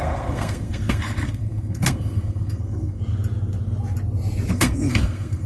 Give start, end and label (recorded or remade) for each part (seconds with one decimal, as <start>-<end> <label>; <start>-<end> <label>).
0.0-3.0 remade; 3.0-4.5 recorded; 4.5-5.5 remade